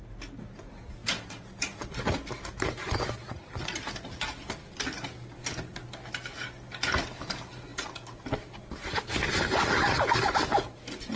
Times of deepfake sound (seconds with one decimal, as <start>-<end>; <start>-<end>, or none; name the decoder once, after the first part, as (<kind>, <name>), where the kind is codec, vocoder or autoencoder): none